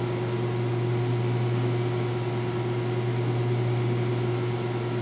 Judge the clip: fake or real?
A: real